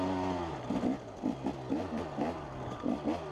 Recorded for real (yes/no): yes